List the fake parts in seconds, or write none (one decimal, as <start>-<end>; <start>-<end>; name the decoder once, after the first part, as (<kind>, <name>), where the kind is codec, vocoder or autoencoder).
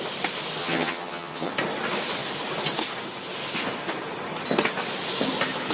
0.6-1.5 (vocoder, HiFi-GAN)